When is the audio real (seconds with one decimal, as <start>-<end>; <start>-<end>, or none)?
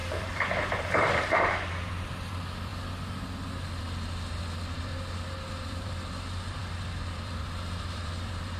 2.7-3.8; 4.9-5.5